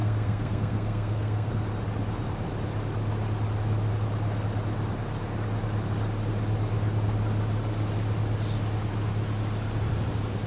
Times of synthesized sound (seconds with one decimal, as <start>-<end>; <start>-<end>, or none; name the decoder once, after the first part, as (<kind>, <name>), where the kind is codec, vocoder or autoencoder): 0.0-1.5 (codec, SNAC)